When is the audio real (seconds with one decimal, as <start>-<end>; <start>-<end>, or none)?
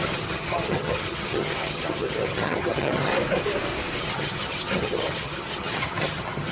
3.1-4.0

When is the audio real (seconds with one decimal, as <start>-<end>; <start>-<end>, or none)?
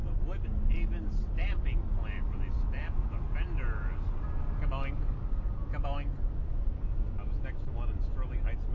0.0-8.7